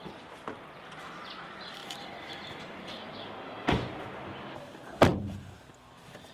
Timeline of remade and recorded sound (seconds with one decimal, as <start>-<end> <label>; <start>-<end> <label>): 0.0-1.8 recorded; 1.8-3.1 remade; 3.1-5.1 recorded; 5.1-5.7 remade; 5.7-6.3 recorded

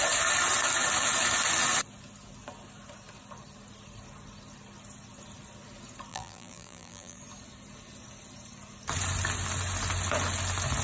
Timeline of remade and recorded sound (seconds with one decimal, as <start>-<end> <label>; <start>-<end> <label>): 0.0-6.1 recorded; 6.1-7.2 remade; 7.2-10.8 recorded

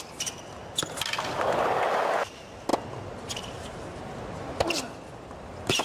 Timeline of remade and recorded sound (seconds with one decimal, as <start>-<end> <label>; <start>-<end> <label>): 0.0-5.8 recorded